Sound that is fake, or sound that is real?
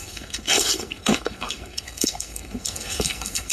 fake